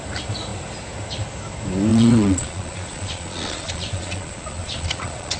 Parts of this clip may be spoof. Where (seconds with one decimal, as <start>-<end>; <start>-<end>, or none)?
1.9-5.4